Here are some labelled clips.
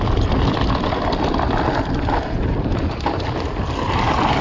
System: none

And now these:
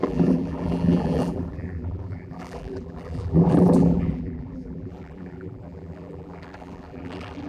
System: vocoder, BigVGAN v2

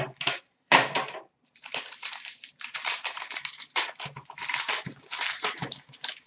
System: vocoder, BigVGAN v2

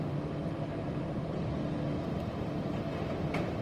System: none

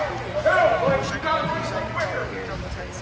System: none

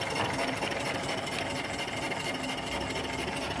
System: none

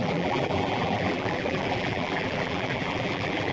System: vocoder, BigVGAN v2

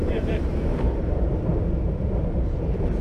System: vocoder, BigVGAN v2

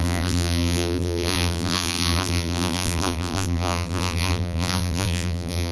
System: vocoder, BigVGAN v2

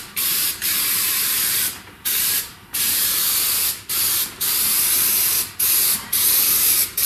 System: vocoder, BigVGAN v2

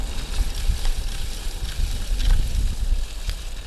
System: none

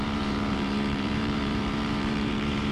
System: vocoder, BigVGAN v2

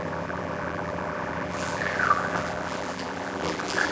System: vocoder, BigVGAN v2